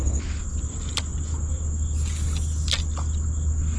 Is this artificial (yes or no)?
no